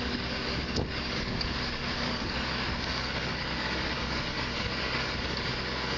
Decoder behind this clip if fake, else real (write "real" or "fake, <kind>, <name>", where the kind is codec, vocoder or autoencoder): fake, codec, DAC